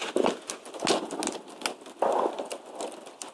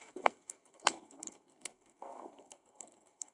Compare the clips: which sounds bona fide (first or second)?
first